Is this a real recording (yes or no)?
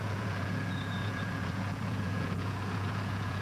no